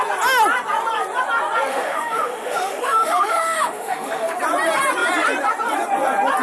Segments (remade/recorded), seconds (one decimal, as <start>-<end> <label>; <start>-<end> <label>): 0.0-1.7 recorded; 1.7-4.4 remade; 4.4-6.4 recorded